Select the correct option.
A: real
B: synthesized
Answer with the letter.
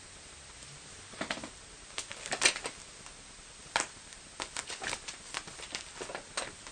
A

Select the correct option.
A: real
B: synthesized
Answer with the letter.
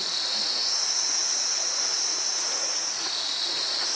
B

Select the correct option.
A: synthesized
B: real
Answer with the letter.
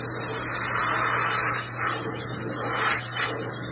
B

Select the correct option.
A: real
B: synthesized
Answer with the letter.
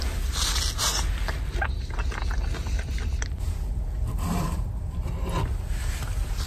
A